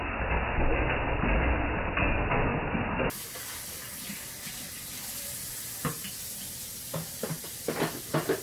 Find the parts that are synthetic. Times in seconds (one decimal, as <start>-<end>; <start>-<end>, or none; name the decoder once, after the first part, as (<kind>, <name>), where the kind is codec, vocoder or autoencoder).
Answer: none